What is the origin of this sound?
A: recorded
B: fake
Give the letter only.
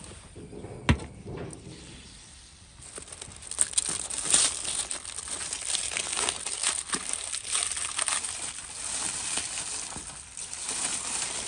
A